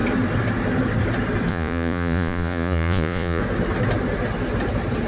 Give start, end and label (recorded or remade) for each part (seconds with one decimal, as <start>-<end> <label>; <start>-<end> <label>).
0.0-1.5 recorded; 1.5-3.4 remade; 3.4-5.1 recorded